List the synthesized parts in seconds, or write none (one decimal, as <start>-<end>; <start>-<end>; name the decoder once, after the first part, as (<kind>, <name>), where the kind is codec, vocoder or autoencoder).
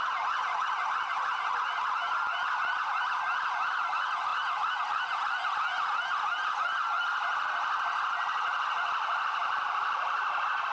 none